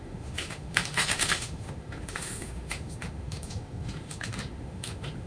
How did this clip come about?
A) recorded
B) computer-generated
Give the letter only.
B